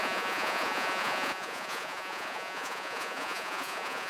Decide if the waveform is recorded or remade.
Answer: remade